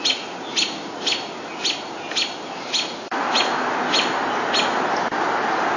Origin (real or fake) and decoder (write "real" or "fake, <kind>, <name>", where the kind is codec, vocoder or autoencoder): real